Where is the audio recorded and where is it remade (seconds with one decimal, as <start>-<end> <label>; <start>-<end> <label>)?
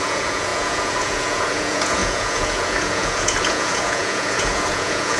0.0-5.2 remade